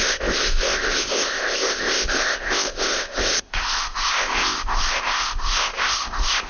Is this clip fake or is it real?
fake